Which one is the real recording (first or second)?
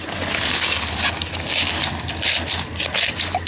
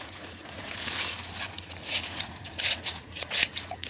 first